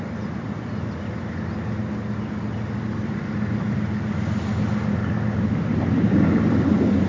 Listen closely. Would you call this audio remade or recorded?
recorded